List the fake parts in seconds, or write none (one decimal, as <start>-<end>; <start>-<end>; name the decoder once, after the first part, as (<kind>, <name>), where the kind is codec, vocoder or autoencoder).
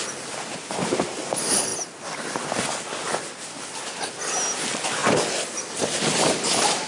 1.7-2.8 (vocoder, BigVGAN v2); 5.0-5.6